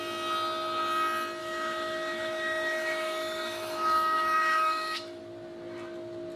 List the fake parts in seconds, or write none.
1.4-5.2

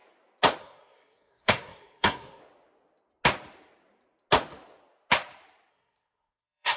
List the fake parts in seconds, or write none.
0.6-2.4; 5.7-6.8

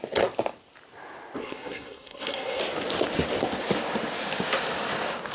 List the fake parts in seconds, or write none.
1.4-2.6

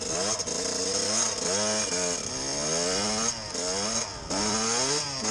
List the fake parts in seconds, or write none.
none

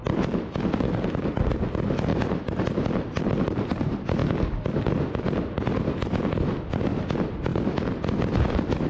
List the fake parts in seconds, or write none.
2.1-3.4; 4.2-5.0

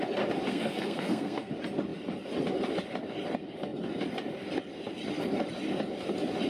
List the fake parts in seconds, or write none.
0.5-1.5

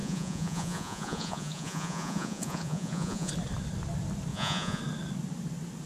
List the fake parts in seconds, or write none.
0.0-3.3; 4.3-4.8

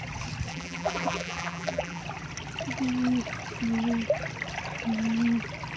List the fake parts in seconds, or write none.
0.5-2.0